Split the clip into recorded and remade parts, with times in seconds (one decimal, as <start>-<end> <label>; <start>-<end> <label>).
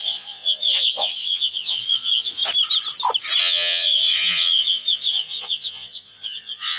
0.0-2.4 remade; 2.4-3.4 recorded; 3.4-6.8 remade